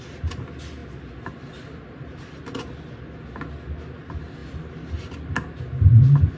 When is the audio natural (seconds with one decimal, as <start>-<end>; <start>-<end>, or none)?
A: 0.0-6.4